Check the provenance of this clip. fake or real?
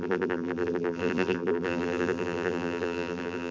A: fake